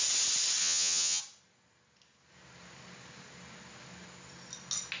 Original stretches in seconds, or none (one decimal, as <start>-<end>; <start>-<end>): 0.0-0.6; 1.2-5.0